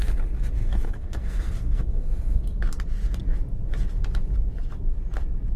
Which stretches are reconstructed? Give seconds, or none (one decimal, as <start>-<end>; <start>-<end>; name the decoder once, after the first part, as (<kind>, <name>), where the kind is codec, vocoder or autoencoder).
0.6-2.6 (codec, SNAC)